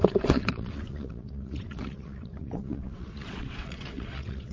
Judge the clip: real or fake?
fake